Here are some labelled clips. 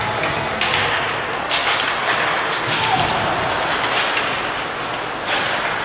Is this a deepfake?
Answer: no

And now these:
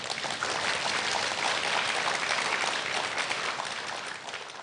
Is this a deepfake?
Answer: yes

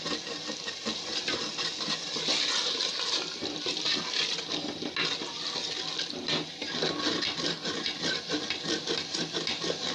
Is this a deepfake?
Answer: no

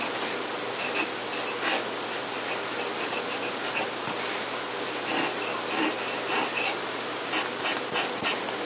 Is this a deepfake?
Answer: no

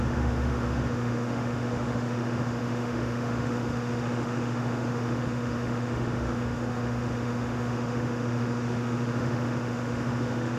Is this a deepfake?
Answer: yes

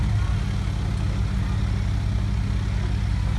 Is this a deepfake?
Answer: no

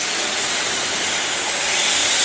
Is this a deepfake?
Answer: no